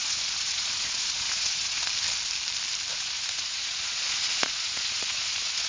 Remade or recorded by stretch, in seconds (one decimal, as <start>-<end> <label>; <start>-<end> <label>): 0.0-1.8 remade; 1.8-2.9 recorded; 2.9-5.7 remade